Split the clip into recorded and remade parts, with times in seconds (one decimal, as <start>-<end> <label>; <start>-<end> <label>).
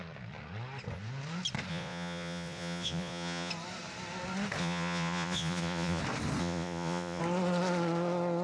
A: 0.0-1.7 recorded; 1.7-3.5 remade; 3.5-4.6 recorded; 4.6-6.0 remade; 6.0-6.4 recorded; 6.4-7.2 remade; 7.2-8.4 recorded